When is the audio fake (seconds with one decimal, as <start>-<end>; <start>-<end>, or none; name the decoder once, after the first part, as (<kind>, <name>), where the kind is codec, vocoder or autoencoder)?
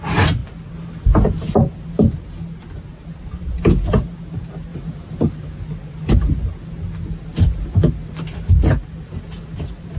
none